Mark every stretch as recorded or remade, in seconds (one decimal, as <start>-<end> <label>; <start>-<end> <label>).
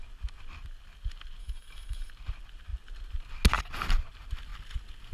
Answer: 0.0-1.4 recorded; 1.4-2.1 remade; 2.1-5.1 recorded